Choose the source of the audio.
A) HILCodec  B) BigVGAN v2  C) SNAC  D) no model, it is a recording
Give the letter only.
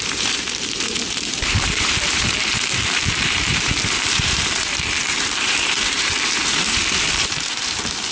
B